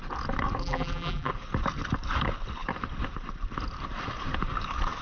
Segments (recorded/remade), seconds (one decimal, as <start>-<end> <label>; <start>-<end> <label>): 0.0-0.6 recorded; 0.6-1.3 remade; 1.3-5.0 recorded